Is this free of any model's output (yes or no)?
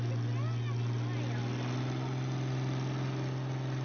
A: yes